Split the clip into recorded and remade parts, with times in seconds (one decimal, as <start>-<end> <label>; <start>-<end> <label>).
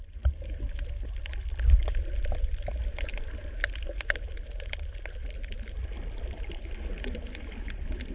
0.0-8.1 recorded